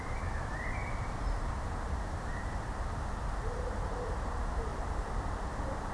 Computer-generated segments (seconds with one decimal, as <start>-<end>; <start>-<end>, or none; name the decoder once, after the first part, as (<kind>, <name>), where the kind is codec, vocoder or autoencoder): 0.0-0.8 (vocoder, BigVGAN v2); 3.4-4.7